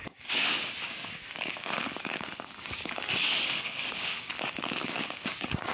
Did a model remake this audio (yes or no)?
yes